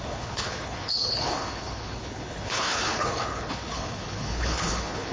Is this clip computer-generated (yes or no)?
yes